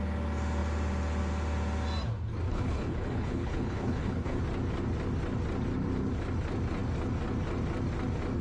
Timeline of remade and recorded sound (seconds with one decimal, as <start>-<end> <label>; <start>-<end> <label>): 0.0-2.5 recorded; 2.5-4.4 remade; 4.4-8.4 recorded